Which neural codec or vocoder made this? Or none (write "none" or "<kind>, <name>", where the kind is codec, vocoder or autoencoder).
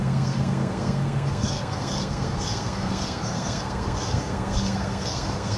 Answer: codec, SNAC